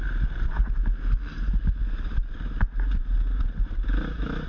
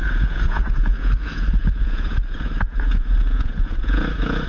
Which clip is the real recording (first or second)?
first